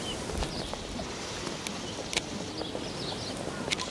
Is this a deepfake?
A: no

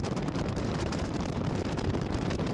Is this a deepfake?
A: yes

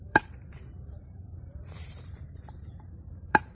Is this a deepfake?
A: yes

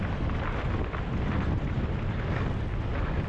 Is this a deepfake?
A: no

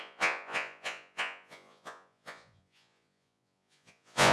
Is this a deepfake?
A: yes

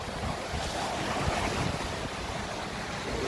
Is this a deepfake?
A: no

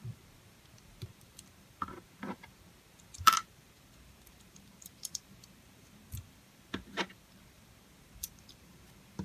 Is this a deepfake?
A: yes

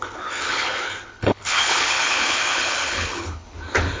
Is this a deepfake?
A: yes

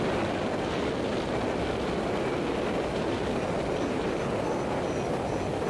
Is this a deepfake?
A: no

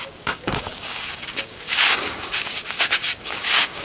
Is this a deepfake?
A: yes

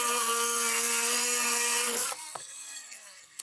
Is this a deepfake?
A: yes